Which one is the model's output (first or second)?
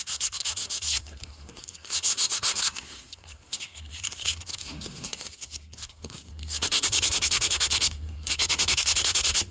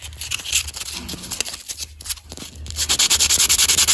first